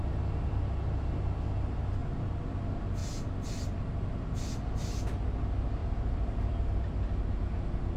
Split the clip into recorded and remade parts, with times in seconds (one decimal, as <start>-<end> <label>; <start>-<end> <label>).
0.0-3.0 recorded; 3.0-4.0 remade; 4.0-5.8 recorded; 5.8-6.9 remade; 6.9-8.0 recorded